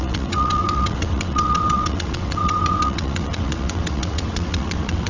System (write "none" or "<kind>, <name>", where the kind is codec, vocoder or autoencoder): vocoder, WaveNeXt